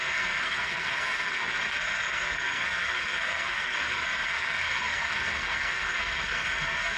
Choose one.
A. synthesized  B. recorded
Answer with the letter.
A